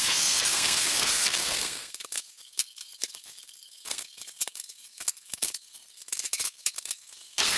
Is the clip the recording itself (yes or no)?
no